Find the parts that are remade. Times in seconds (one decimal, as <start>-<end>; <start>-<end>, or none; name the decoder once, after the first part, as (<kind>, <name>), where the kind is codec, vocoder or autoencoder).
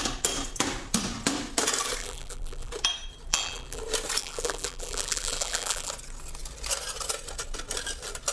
2.0-2.7 (vocoder, BigVGAN v2); 3.3-3.8; 4.2-5.9